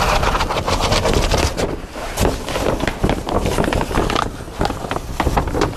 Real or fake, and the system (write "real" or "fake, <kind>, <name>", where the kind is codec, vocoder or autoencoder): real